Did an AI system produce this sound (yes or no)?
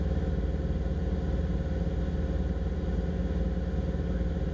no